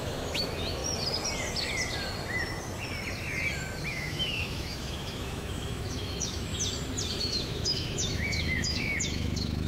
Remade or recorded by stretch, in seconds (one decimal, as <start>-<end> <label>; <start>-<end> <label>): 0.0-0.8 remade; 0.8-3.9 recorded; 3.9-6.5 remade; 6.5-7.2 recorded; 7.2-9.7 remade